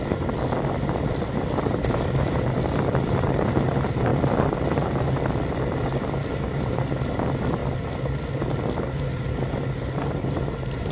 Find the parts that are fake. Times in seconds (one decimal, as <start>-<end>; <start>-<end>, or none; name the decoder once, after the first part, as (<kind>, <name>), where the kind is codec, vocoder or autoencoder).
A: none